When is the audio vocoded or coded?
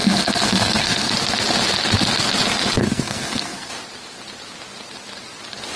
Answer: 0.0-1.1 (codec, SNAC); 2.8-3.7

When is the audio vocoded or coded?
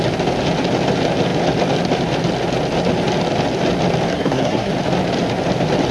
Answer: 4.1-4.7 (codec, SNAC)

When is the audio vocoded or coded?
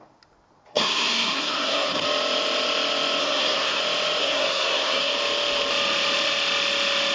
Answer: 0.7-2.0 (codec, SNAC); 3.2-3.8; 4.2-5.1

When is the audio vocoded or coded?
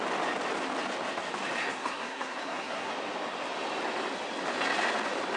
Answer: 1.6-2.9 (codec, SNAC)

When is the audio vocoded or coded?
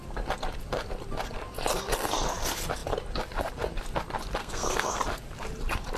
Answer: 4.4-5.0 (codec, SNAC)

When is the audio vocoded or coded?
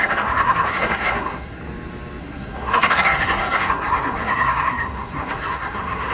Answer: 0.0-1.6 (codec, SNAC); 2.2-6.1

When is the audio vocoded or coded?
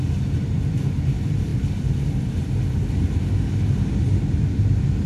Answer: none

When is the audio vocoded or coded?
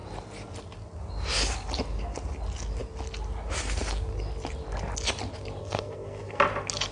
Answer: 5.6-6.4 (codec, SNAC)